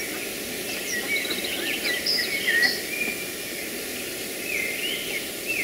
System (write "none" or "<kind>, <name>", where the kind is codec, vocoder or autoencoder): none